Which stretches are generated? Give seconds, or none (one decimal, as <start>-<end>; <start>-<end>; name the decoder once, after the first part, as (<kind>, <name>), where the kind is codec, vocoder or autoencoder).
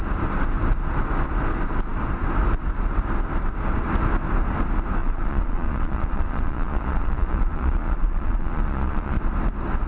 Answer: 5.0-9.2 (vocoder, Vocos)